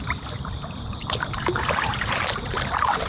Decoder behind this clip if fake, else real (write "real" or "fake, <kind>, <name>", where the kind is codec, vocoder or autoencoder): real